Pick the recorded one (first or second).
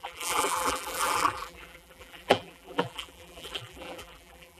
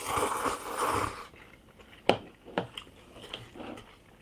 second